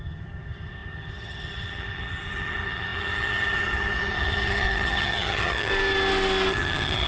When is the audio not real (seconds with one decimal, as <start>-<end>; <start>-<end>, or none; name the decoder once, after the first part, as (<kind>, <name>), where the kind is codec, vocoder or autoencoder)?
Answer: 0.0-5.7 (vocoder, HiFi-GAN); 6.5-7.1